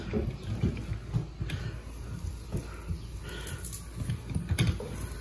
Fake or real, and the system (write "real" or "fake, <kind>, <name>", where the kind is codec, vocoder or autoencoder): real